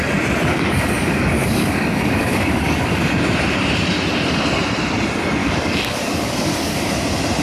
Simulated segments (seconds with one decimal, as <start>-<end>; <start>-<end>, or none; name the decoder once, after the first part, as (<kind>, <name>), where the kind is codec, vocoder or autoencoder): 0.5-3.0 (codec, DAC); 5.4-6.9